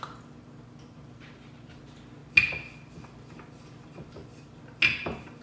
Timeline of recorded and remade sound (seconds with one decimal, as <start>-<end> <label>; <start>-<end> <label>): 0.0-5.4 recorded